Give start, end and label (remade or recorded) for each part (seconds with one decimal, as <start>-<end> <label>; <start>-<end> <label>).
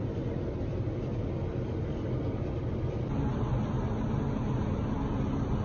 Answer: 0.0-5.6 recorded